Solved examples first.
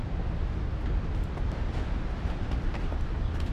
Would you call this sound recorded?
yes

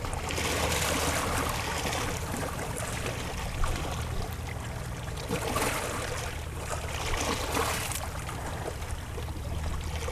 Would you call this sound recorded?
yes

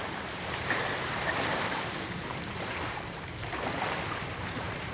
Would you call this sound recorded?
no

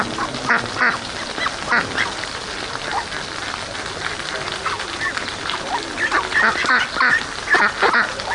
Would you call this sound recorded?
yes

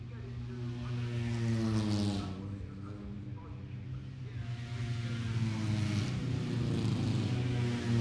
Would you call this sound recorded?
yes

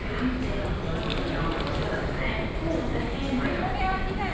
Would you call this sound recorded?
yes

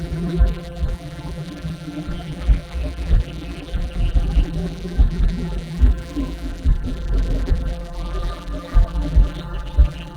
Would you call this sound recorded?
no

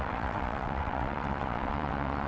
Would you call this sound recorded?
no